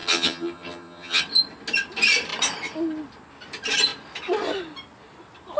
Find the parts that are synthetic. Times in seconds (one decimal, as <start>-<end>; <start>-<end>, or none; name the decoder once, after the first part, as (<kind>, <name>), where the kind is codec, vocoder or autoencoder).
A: 0.0-1.2 (vocoder, HiFi-GAN)